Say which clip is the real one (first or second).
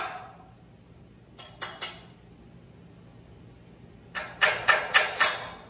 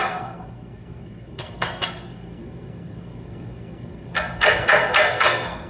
first